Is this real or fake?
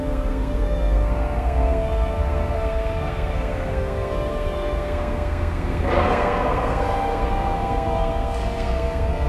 fake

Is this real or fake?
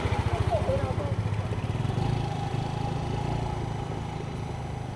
real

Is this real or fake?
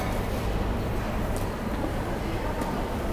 fake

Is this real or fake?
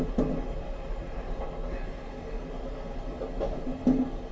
real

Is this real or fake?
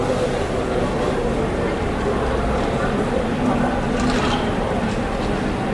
real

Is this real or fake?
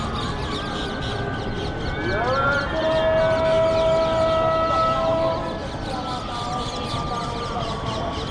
real